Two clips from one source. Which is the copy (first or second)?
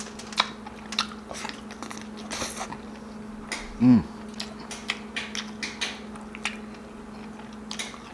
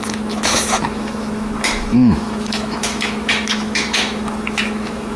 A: second